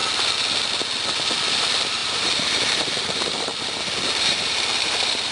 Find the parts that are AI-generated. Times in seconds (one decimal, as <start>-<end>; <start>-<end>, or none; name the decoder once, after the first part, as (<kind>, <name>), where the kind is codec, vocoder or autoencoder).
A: 1.5-3.5 (vocoder, BigVGAN v2); 4.2-5.3